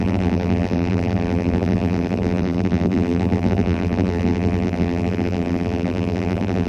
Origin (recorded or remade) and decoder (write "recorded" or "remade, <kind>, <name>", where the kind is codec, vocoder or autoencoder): remade, vocoder, BigVGAN v2